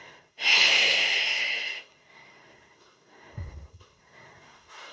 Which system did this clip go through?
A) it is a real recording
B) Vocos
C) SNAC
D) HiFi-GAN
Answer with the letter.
C